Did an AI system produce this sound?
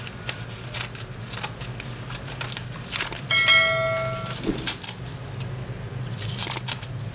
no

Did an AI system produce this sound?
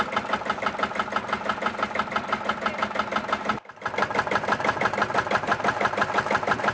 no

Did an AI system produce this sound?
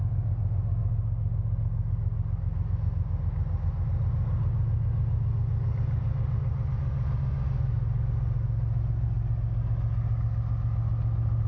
no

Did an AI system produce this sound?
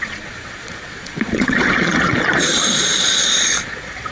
yes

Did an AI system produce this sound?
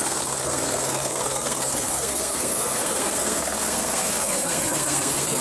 yes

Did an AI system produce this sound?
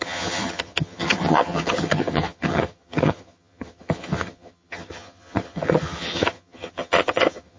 yes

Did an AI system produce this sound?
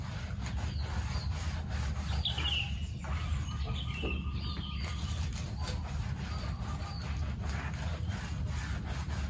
no